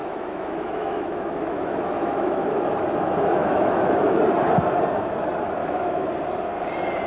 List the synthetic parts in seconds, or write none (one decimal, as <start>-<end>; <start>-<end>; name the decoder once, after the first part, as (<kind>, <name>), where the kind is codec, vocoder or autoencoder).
0.0-2.8 (autoencoder, DAC-VAE); 3.4-4.2; 5.6-6.1